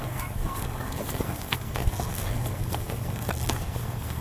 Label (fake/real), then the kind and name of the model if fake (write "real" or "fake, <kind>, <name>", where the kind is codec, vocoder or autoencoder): fake, codec, SNAC